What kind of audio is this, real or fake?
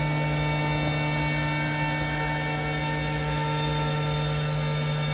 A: real